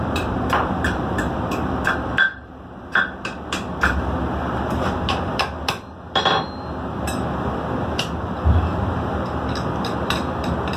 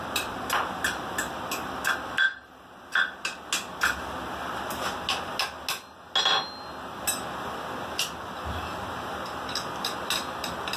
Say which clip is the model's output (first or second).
first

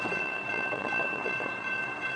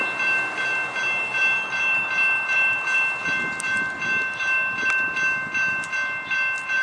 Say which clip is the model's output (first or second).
first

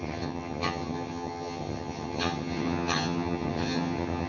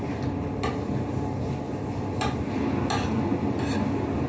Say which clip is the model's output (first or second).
first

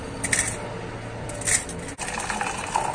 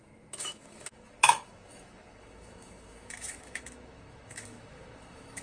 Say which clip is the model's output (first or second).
second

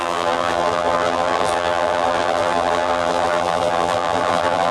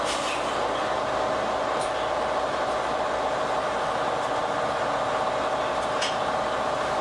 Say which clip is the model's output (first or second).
first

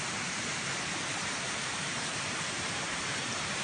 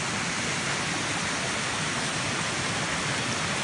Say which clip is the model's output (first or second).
first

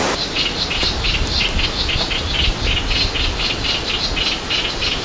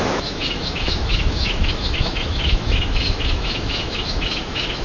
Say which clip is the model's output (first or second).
second